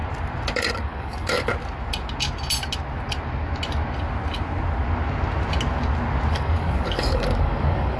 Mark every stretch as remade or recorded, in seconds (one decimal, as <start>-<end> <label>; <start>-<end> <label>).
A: 0.0-0.7 recorded; 0.7-1.5 remade; 1.5-6.3 recorded; 6.3-8.0 remade